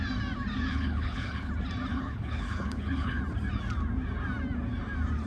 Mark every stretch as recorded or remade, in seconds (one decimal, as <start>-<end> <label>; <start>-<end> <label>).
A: 0.0-0.7 recorded; 0.7-1.5 remade; 1.5-1.9 recorded; 1.9-3.2 remade; 3.2-5.3 recorded